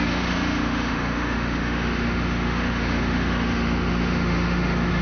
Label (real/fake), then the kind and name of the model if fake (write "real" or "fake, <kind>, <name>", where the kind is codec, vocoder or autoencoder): fake, autoencoder, DAC-VAE